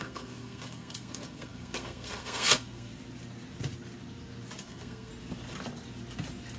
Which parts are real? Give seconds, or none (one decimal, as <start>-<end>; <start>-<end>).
2.9-4.6; 5.1-6.6